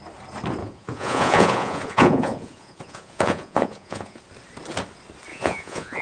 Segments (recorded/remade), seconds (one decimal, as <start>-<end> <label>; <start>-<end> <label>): 0.0-0.6 recorded; 0.6-4.2 remade; 4.2-5.3 recorded; 5.3-6.0 remade